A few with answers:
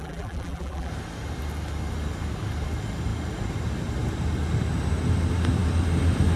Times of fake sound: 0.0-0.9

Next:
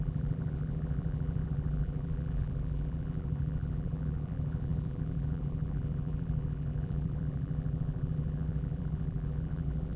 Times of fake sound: 0.0-10.0

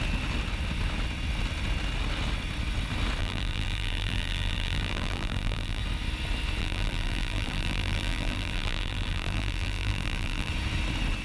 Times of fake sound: 3.2-5.8; 6.6-10.5

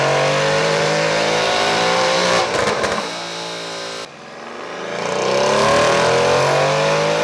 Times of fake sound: 0.6-2.4

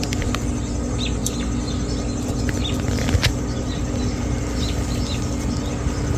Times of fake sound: none

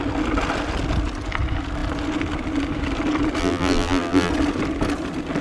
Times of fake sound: 3.4-4.3